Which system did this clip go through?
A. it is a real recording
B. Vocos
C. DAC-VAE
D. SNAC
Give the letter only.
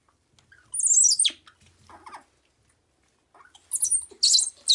A